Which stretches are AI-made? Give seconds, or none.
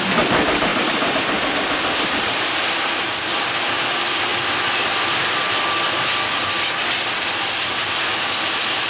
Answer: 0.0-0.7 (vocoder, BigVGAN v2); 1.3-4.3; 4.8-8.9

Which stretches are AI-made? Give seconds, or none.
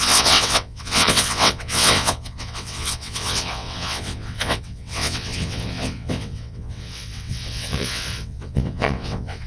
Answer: 0.0-9.5 (vocoder, WaveNeXt)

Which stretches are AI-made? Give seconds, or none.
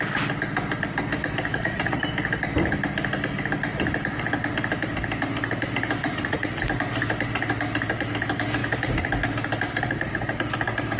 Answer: 1.5-2.0 (vocoder, Vocos); 6.0-6.6